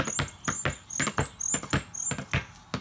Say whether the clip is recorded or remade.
recorded